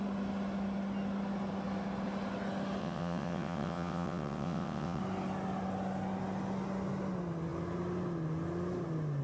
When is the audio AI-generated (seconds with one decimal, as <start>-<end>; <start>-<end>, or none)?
2.8-5.0